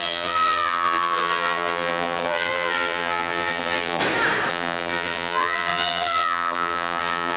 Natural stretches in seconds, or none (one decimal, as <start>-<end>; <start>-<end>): 4.0-4.5